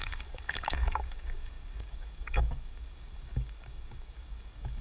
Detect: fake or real fake